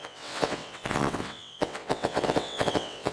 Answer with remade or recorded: remade